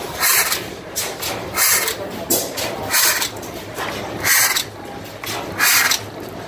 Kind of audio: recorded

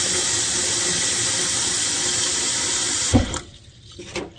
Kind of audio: recorded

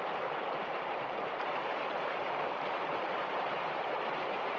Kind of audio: remade